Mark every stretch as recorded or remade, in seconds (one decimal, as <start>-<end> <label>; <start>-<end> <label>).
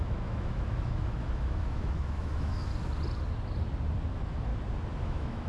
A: 0.0-2.7 remade; 2.7-4.1 recorded; 4.1-4.5 remade; 4.5-5.0 recorded; 5.0-5.5 remade